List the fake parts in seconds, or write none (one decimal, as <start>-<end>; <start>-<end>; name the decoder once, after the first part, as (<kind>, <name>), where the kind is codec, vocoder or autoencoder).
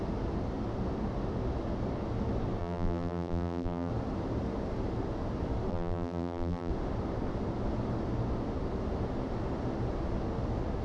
2.6-3.9 (vocoder, BigVGAN v2); 5.7-6.7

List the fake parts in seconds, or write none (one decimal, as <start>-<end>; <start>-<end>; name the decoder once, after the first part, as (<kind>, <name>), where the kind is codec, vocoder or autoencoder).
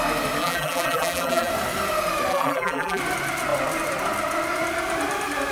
0.4-1.5 (vocoder, BigVGAN v2); 2.3-3.0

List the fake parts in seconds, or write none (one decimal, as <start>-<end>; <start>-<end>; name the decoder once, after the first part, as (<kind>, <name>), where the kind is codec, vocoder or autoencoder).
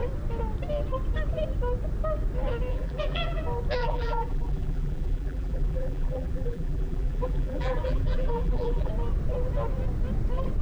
2.7-3.4 (vocoder, BigVGAN v2); 3.8-8.9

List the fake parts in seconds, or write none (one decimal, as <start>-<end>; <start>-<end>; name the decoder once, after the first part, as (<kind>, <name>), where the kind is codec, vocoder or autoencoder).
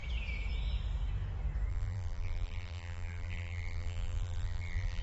1.7-5.0 (vocoder, BigVGAN v2)